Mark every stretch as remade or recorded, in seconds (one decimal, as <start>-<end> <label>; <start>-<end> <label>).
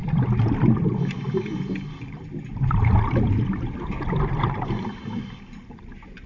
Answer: 0.0-6.3 remade